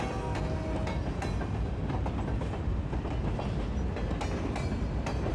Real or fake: real